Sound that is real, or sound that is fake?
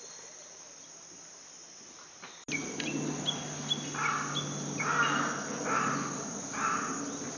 real